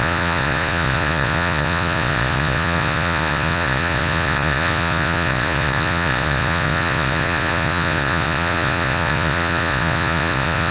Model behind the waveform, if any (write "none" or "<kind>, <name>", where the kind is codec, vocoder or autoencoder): vocoder, Vocos